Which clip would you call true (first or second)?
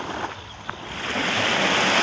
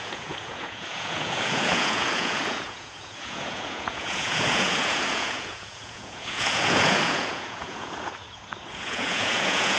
first